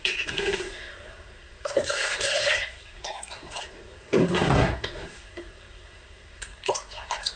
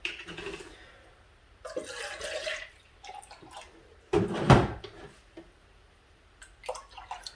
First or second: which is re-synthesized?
first